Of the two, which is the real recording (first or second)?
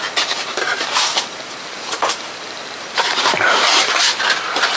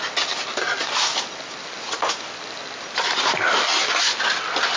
second